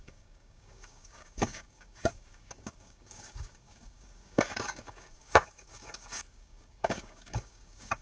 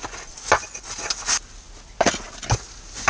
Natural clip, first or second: second